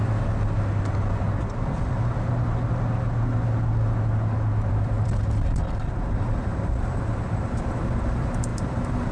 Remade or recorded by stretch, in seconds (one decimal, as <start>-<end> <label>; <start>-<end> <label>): 0.0-4.7 recorded; 4.7-9.1 remade